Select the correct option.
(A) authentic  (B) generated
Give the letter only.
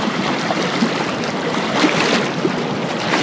A